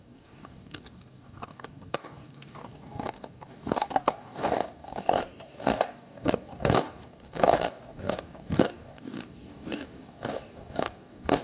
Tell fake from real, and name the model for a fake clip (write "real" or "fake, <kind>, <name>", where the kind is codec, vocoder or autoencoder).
fake, codec, DAC